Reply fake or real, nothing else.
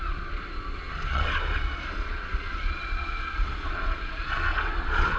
fake